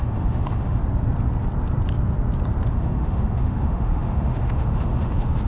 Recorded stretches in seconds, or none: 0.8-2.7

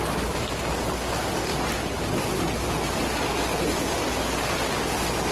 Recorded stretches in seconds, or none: 0.0-5.3

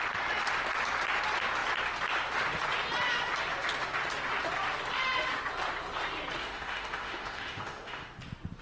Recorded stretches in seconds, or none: 0.0-6.4; 8.2-8.6